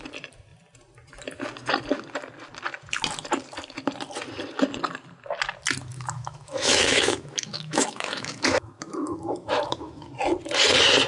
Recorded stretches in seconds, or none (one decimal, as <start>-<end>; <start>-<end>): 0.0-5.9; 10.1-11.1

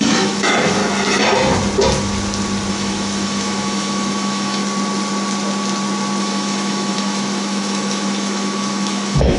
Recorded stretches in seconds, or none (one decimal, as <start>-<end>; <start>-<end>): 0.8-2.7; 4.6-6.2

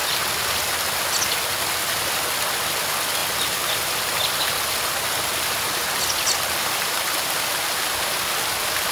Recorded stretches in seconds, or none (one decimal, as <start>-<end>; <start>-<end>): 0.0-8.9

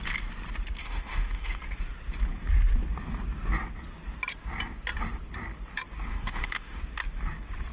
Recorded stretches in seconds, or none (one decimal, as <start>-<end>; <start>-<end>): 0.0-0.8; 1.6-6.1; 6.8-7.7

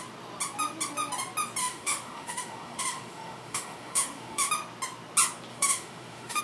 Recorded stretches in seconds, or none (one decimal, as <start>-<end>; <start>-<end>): 0.0-1.6; 4.5-5.5

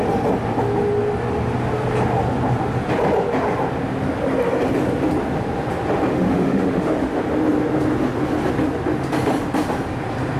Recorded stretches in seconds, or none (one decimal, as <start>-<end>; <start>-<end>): 0.0-6.1; 7.2-10.4

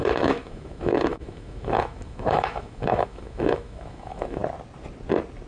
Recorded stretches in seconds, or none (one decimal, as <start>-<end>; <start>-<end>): 4.4-5.5